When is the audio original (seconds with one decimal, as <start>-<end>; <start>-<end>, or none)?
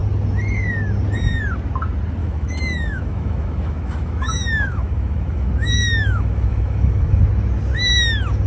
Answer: 0.0-2.2; 7.2-8.5